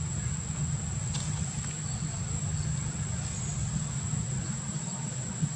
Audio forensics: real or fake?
real